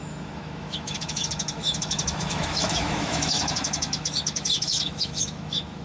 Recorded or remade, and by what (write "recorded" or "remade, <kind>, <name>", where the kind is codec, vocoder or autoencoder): remade, autoencoder, DAC-VAE